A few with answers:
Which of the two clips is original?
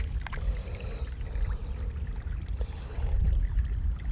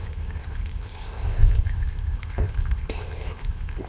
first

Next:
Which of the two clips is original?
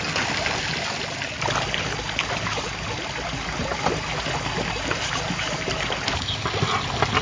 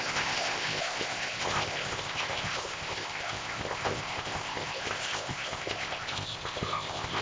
first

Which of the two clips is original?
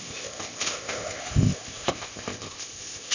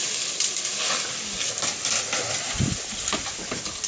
second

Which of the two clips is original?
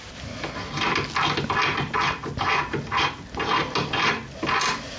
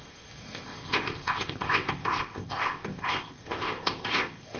first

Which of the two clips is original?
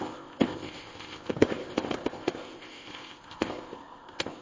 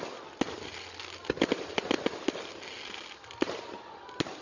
second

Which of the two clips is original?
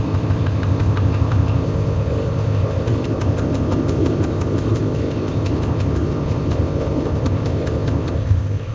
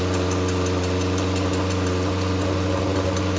second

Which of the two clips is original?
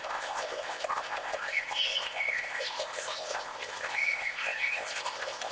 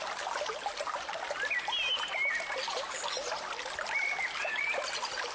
second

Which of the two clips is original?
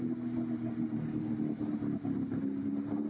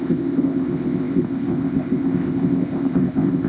first